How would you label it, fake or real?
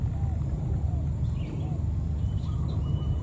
real